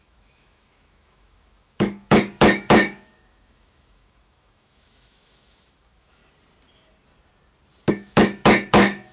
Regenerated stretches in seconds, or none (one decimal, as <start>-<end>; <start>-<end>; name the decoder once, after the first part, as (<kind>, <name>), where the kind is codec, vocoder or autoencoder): 0.0-6.2 (autoencoder, DAC-VAE); 7.9-9.1